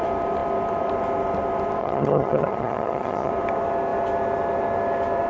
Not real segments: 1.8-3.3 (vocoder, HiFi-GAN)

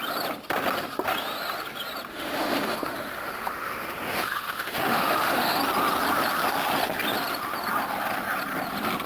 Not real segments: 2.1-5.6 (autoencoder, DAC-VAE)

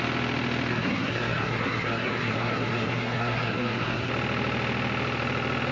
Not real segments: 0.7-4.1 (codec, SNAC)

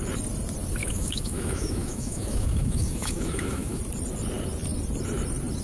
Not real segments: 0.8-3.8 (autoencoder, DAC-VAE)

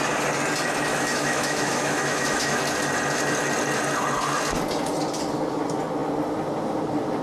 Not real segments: 0.9-2.6 (autoencoder, DAC-VAE)